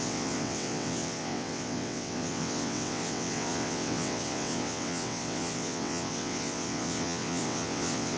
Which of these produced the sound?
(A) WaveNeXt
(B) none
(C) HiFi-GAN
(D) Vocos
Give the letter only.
A